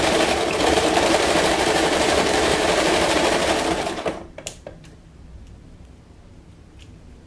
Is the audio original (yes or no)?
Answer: no